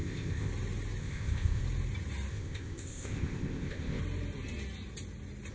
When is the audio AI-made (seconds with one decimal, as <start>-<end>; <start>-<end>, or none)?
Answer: 0.0-0.5; 1.0-1.6; 2.3-4.0